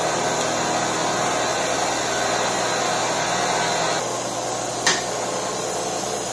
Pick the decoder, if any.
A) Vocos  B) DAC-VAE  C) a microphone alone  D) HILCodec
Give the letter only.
C